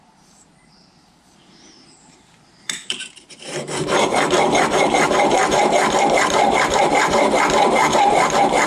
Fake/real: fake